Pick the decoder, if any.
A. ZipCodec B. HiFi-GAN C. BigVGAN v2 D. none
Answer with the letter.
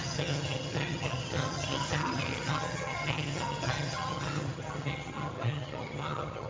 B